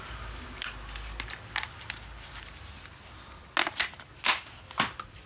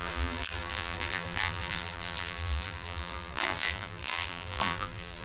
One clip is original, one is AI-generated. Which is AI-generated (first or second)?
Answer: second